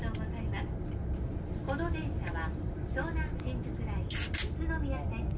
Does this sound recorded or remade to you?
recorded